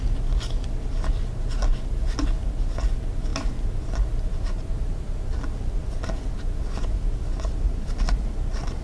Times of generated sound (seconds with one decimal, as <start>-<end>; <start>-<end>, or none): none